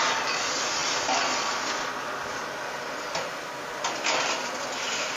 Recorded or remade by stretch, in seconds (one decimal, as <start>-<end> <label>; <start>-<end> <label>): 0.0-5.2 recorded

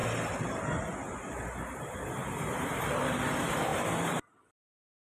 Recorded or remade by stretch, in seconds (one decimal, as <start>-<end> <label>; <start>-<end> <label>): 0.0-5.2 recorded

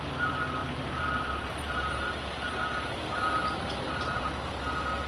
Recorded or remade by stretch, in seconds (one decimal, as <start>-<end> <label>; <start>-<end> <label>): 0.0-0.6 recorded; 0.6-2.9 remade; 2.9-3.4 recorded; 3.4-4.6 remade; 4.6-5.1 recorded

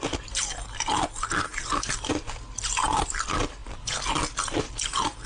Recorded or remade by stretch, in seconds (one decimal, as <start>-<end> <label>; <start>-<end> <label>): 0.0-1.5 recorded; 1.5-2.1 remade; 2.1-5.3 recorded